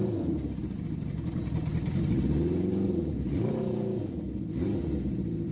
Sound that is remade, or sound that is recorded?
recorded